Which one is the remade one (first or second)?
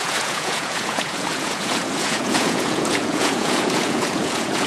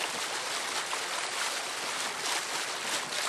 first